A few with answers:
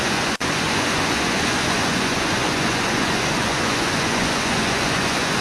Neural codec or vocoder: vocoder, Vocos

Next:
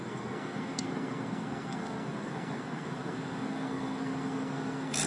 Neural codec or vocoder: codec, SNAC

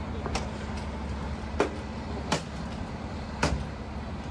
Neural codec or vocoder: none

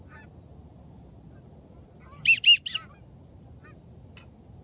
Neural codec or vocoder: none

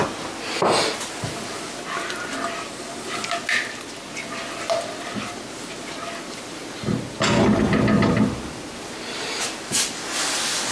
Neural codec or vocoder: none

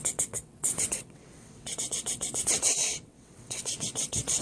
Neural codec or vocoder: vocoder, WaveNeXt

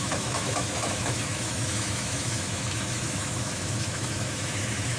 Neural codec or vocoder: autoencoder, DAC-VAE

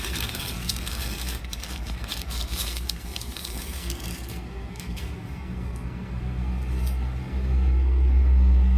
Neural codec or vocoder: codec, SNAC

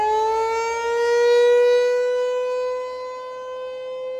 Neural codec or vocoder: none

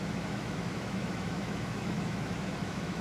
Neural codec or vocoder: autoencoder, DAC-VAE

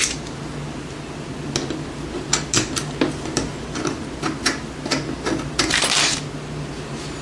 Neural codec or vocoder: none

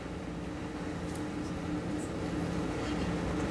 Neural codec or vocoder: none